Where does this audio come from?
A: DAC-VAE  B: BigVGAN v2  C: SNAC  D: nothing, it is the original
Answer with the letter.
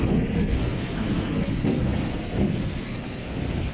C